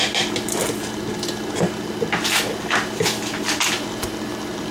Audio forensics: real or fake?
real